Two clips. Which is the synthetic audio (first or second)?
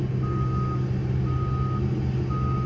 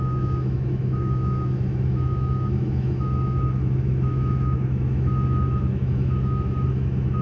second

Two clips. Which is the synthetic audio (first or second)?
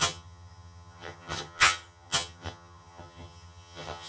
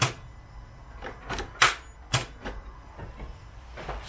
first